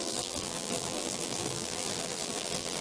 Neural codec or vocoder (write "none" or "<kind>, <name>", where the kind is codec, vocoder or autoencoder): vocoder, BigVGAN v2